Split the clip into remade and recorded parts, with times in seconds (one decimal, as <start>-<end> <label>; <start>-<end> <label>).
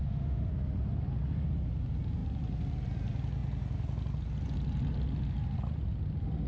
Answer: 0.0-0.5 remade; 0.5-6.5 recorded